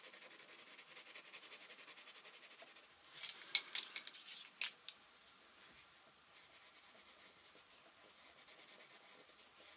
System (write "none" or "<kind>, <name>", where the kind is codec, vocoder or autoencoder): none